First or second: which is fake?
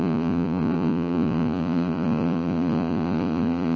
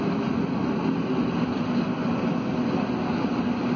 first